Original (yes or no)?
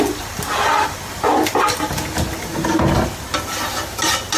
yes